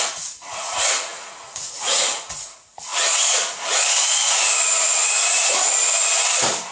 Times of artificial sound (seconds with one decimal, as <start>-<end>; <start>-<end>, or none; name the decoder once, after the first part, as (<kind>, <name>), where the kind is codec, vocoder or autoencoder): 0.0-5.2 (vocoder, Vocos)

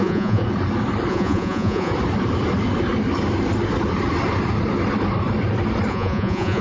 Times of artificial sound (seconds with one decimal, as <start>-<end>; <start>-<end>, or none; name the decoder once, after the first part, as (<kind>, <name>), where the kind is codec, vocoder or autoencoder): 0.0-0.4 (vocoder, Vocos); 1.1-1.9; 5.9-6.6

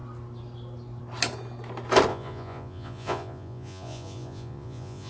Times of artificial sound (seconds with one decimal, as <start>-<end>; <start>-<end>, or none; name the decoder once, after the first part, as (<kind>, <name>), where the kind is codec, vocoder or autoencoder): 2.1-5.1 (vocoder, Vocos)